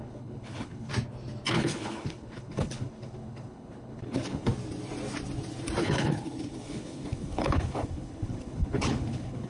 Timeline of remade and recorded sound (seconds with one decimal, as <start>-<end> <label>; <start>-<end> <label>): 0.0-0.9 remade; 0.9-1.5 recorded; 1.5-4.5 remade; 4.5-5.8 recorded; 5.8-9.5 remade